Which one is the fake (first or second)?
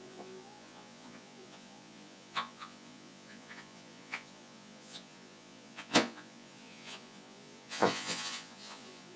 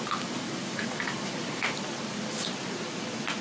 first